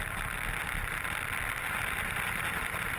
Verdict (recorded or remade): recorded